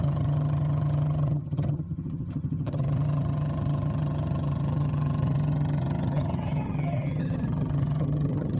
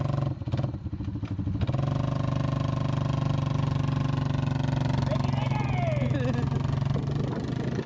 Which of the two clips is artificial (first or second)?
first